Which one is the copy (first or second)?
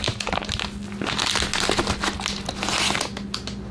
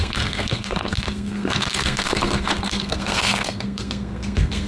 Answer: second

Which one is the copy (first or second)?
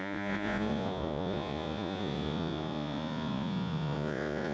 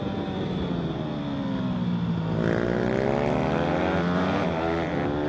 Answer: first